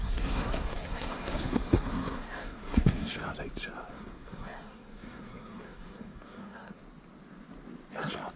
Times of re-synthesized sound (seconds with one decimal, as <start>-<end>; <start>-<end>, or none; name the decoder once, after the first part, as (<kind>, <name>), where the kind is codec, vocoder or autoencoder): 0.0-3.2 (codec, SNAC); 3.9-6.8